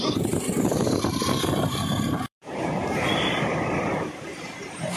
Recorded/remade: remade